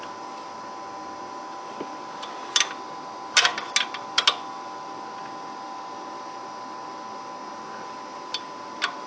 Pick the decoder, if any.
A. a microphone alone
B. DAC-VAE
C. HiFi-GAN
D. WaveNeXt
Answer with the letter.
A